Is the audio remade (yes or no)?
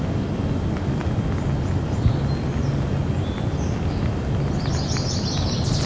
no